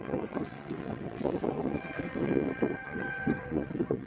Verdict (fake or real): fake